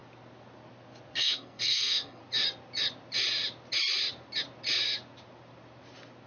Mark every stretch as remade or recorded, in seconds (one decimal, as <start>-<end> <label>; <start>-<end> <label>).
0.0-1.2 recorded; 1.2-2.2 remade; 2.2-6.3 recorded